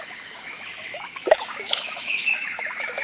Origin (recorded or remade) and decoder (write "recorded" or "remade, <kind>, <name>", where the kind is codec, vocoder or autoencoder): remade, autoencoder, DAC-VAE